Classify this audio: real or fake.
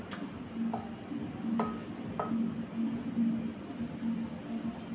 real